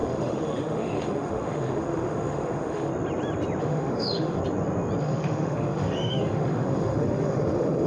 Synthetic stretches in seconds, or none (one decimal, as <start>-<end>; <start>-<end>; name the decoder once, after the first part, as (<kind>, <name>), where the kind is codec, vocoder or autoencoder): 0.0-2.9 (autoencoder, DAC-VAE); 3.6-4.4; 5.0-7.9